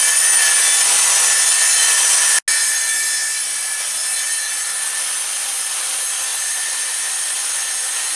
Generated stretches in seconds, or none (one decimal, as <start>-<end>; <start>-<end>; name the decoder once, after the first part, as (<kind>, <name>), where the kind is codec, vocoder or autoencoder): none